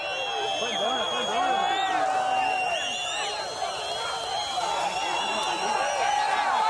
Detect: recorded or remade recorded